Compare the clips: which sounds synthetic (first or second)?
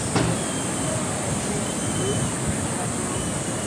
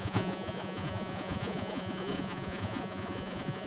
second